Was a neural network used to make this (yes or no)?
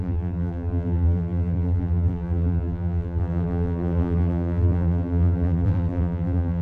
yes